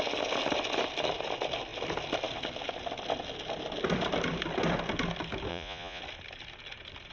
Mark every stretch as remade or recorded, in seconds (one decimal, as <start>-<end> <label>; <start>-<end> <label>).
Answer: 0.0-5.5 recorded; 5.5-6.0 remade; 6.0-7.1 recorded